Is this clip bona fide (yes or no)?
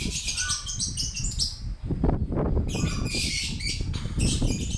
yes